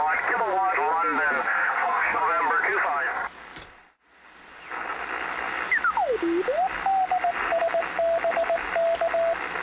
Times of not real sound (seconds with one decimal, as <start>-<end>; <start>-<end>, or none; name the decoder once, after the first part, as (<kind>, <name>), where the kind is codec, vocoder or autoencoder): 1.4-2.2 (codec, SNAC)